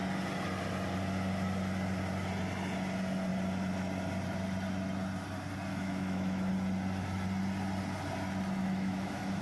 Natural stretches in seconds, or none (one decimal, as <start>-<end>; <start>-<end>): 0.0-5.7; 6.5-8.6